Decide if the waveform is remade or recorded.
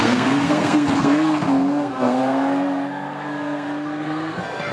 remade